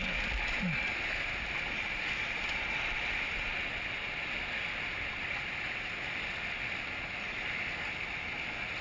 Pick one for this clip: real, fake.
real